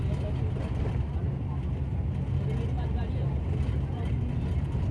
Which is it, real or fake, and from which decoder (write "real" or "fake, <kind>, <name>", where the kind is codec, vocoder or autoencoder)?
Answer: real